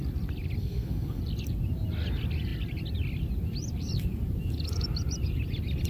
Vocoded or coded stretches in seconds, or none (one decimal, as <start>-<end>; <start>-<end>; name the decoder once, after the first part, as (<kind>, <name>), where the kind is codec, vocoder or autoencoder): 0.6-1.2 (codec, SNAC)